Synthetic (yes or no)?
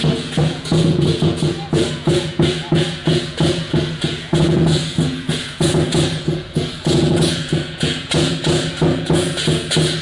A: yes